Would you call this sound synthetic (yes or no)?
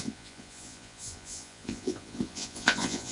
yes